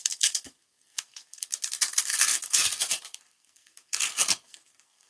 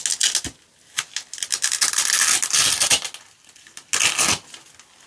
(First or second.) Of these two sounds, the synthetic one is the first